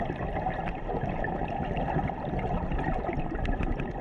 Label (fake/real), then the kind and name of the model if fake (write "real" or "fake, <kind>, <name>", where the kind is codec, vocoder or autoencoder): real